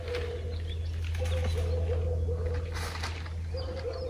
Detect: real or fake real